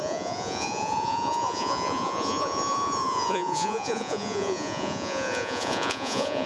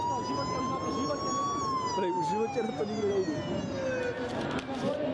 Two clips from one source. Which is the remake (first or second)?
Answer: first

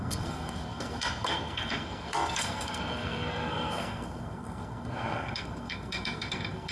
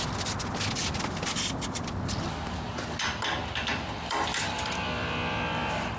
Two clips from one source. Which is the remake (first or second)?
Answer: first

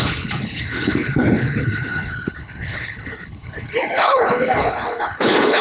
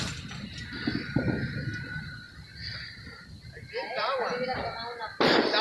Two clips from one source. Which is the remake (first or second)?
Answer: first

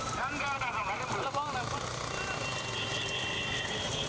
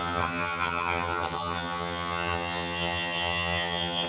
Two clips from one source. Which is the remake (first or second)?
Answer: second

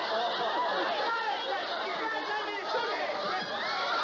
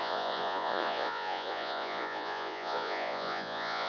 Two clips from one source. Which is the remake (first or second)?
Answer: second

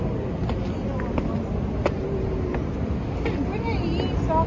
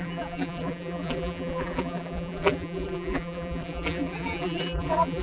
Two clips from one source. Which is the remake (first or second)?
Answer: second